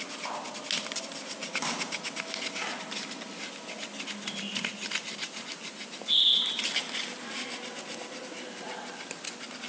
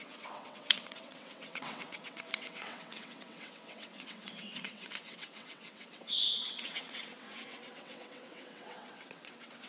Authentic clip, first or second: first